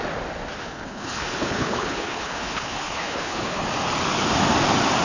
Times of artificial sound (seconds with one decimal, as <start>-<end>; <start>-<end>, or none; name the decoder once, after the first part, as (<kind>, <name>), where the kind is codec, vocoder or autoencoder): 0.6-3.6 (codec, HILCodec)